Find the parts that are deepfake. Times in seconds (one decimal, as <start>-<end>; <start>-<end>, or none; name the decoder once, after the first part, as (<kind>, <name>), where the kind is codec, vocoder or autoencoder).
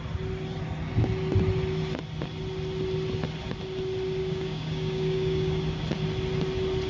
4.2-5.6 (codec, DAC)